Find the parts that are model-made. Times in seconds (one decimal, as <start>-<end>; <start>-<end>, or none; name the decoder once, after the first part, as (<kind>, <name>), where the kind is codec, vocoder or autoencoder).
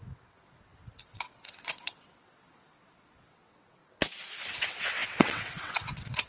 0.0-3.8 (vocoder, WaveNeXt); 4.5-6.3